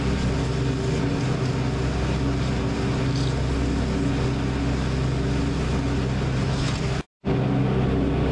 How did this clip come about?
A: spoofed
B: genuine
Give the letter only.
B